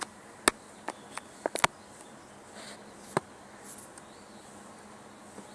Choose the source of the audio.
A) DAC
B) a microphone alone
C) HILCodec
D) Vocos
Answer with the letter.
B